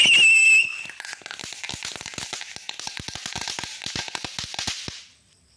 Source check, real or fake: real